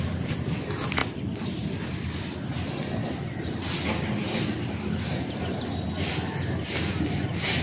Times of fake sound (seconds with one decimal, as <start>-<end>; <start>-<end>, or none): none